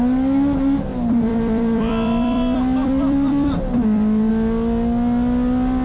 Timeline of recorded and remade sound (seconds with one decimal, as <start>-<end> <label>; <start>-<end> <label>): 0.0-0.9 recorded; 0.9-4.3 remade; 4.3-5.8 recorded